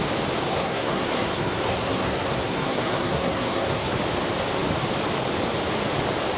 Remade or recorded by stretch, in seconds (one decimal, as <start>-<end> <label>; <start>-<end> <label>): 0.0-0.5 recorded; 0.5-3.9 remade; 3.9-6.4 recorded